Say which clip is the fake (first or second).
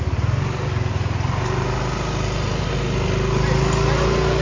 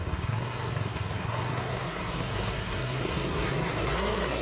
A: second